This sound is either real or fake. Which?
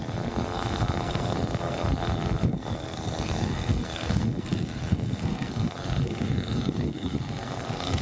fake